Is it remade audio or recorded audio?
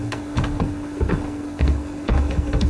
remade